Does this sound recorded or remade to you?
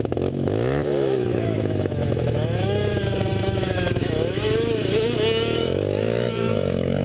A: remade